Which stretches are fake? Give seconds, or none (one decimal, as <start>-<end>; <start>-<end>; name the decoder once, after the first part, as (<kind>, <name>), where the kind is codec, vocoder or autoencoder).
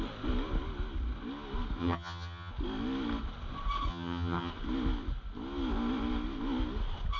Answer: 1.8-2.5 (vocoder, HiFi-GAN); 3.9-4.5